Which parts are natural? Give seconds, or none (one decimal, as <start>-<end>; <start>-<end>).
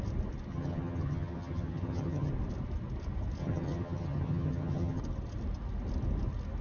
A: 0.0-0.5; 2.3-3.4; 5.0-6.6